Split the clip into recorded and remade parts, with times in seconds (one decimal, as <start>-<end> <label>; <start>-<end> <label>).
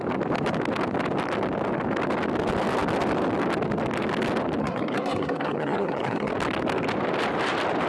0.0-4.6 recorded; 4.6-6.3 remade; 6.3-7.9 recorded